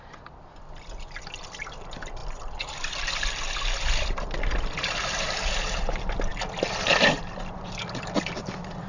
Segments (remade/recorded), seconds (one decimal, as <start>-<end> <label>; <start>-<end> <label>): 0.0-8.9 recorded